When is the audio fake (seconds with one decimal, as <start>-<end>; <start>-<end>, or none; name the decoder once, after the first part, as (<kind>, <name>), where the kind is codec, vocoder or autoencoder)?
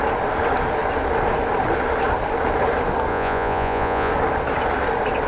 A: 3.1-4.1 (vocoder, Vocos)